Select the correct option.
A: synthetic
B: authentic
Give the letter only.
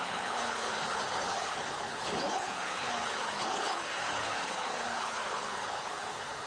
A